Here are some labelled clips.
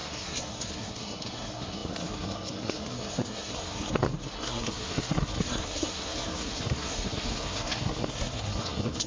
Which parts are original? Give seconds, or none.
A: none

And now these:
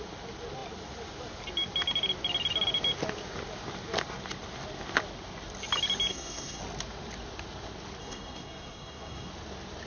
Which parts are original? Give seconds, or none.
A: 0.0-6.1; 6.6-8.0; 9.3-9.9

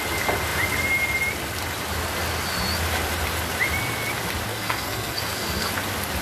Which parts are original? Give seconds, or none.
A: 0.0-4.5; 5.7-6.2

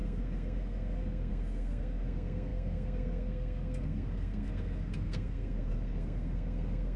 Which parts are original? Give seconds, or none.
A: none